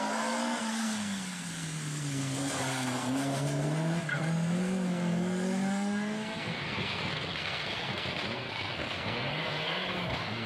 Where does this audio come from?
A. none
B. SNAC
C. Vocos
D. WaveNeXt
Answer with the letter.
B